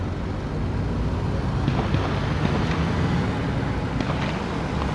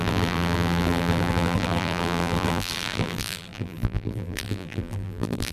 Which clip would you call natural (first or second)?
first